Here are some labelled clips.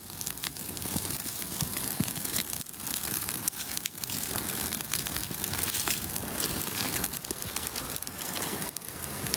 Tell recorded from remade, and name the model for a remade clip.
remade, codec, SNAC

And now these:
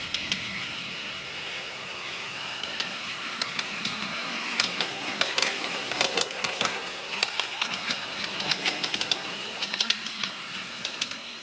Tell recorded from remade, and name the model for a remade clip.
remade, codec, SNAC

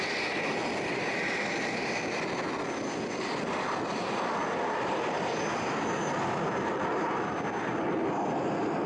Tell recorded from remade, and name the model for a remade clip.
recorded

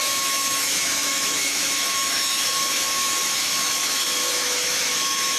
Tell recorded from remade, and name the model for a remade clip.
remade, autoencoder, DAC-VAE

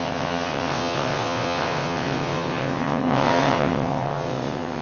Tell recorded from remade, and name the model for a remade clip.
remade, vocoder, WaveNeXt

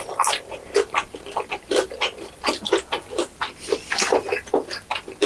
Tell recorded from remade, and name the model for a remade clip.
recorded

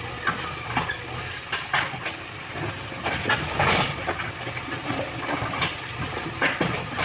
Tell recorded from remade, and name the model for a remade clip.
recorded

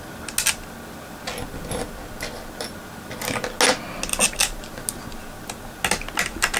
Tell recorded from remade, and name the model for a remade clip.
recorded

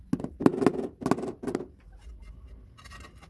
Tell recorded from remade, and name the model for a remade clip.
recorded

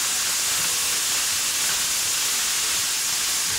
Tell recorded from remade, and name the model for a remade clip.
recorded